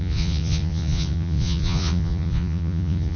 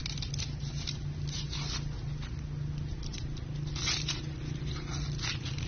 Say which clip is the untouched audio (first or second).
second